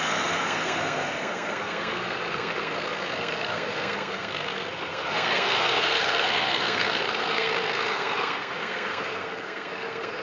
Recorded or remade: remade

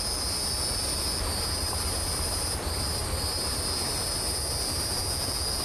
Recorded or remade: recorded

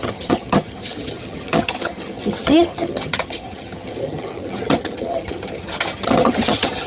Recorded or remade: remade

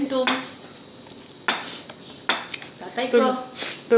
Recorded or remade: recorded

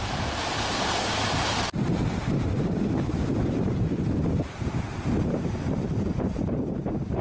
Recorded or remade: remade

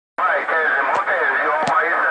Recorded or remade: recorded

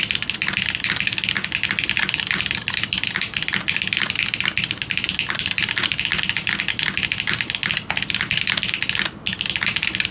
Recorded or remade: recorded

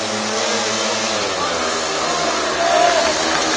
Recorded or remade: recorded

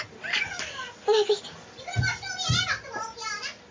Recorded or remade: recorded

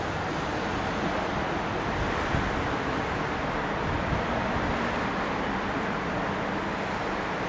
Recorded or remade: recorded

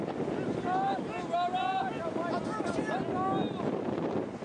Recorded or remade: recorded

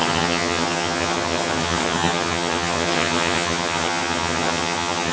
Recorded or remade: remade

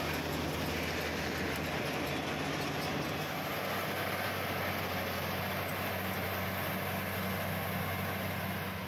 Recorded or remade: recorded